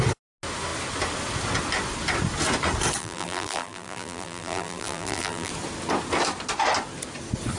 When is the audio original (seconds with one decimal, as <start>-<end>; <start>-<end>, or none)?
0.0-3.0; 5.5-7.6